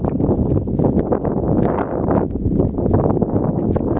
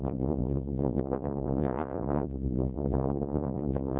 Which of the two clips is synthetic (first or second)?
second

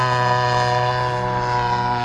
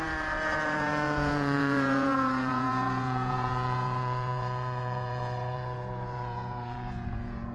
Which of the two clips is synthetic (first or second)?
second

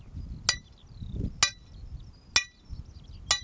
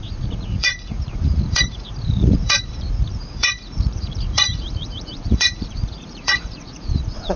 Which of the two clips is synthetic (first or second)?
second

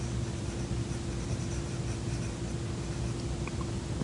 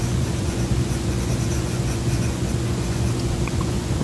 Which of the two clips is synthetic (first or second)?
second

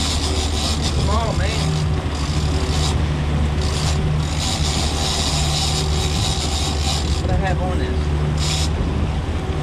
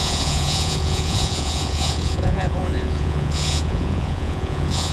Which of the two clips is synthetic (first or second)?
second